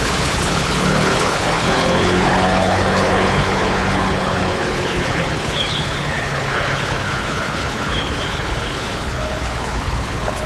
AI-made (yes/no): yes